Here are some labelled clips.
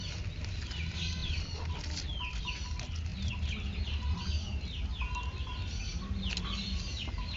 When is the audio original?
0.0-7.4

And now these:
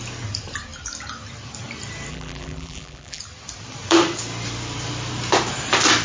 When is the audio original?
0.0-2.1; 3.2-6.0

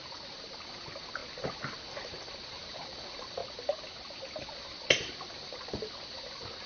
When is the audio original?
0.0-6.7

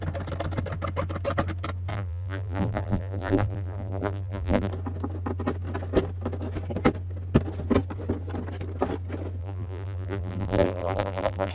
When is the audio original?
0.0-1.9; 4.7-9.4

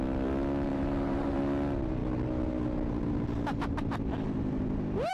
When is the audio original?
0.0-0.7; 1.4-5.1

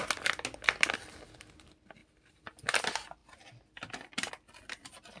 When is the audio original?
0.0-2.0; 2.8-3.2; 4.3-5.2

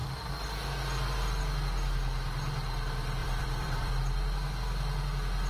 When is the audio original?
0.0-3.2; 3.9-5.5

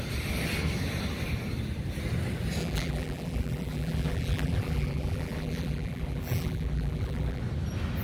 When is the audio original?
0.0-2.6; 7.4-8.0